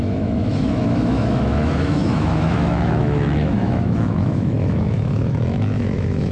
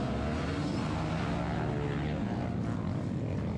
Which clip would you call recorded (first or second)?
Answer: second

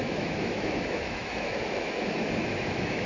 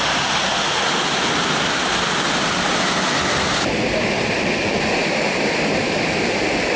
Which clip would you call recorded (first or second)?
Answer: second